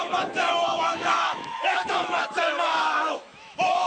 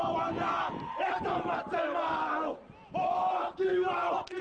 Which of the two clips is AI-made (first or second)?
first